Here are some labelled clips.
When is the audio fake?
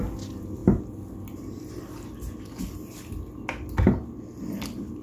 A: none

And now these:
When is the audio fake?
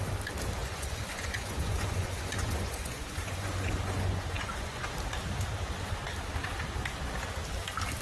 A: 0.6-4.9 (vocoder, Vocos)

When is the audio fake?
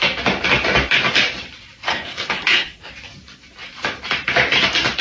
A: 1.9-2.9 (codec, SNAC)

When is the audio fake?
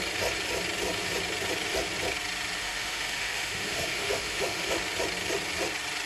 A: 2.6-4.8 (autoencoder, DAC-VAE)